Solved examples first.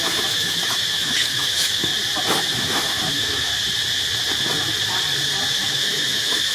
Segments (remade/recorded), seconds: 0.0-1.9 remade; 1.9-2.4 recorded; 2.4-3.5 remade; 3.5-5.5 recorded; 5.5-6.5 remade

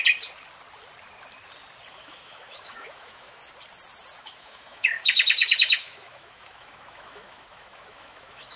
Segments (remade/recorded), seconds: 0.0-1.9 recorded; 1.9-3.4 remade; 3.4-4.2 recorded; 4.2-8.6 remade

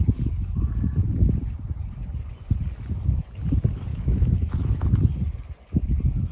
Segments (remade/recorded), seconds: 0.0-3.9 recorded; 3.9-4.8 remade; 4.8-6.3 recorded

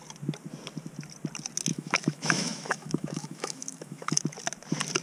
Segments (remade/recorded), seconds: 0.0-1.7 recorded; 1.7-4.2 remade; 4.2-5.0 recorded